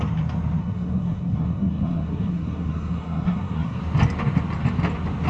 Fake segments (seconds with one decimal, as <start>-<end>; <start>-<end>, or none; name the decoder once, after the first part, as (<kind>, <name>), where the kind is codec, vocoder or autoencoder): 0.6-3.8 (codec, SNAC)